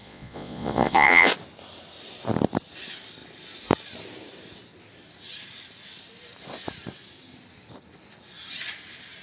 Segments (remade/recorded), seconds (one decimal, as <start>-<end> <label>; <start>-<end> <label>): 0.0-1.3 remade; 1.3-9.2 recorded